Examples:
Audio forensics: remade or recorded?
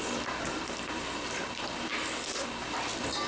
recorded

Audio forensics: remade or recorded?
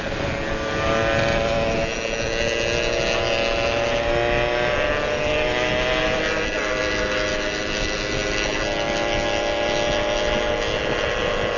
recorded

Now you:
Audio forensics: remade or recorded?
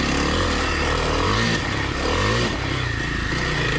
recorded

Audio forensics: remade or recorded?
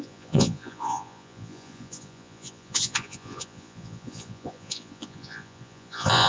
remade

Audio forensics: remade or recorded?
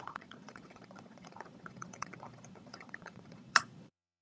remade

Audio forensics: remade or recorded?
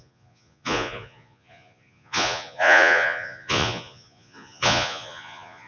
remade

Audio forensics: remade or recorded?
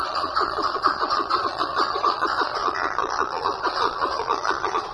remade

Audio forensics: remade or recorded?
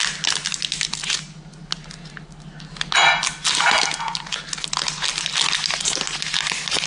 recorded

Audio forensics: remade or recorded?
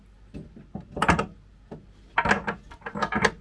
recorded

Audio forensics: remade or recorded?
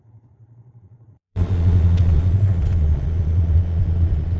remade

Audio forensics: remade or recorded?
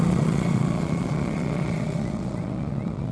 remade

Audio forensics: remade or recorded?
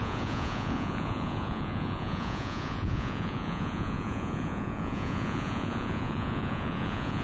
remade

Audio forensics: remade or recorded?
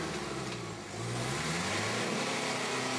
recorded